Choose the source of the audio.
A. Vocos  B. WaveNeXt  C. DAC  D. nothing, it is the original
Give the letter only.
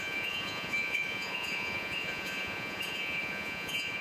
A